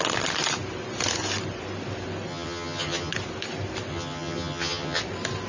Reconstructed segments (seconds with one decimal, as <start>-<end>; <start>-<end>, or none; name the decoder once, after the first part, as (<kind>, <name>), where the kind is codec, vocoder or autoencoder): 2.3-3.1 (vocoder, HiFi-GAN); 3.9-5.0